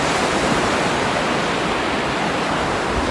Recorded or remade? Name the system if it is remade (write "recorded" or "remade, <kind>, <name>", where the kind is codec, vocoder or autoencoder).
recorded